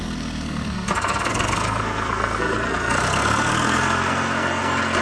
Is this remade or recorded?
remade